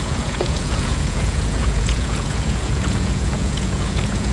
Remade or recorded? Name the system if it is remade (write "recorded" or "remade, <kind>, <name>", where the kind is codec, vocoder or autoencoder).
remade, vocoder, Vocos